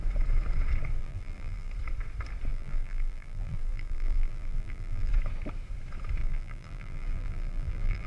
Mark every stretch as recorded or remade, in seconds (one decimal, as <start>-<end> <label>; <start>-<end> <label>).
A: 0.0-1.0 recorded; 1.0-1.7 remade; 1.7-2.5 recorded; 2.5-5.1 remade; 5.1-6.2 recorded; 6.2-8.1 remade